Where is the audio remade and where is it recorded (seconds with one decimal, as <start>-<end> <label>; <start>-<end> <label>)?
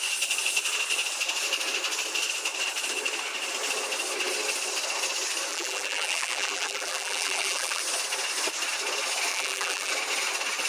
0.0-5.5 recorded; 5.5-7.8 remade; 7.8-9.3 recorded; 9.3-9.9 remade; 9.9-10.7 recorded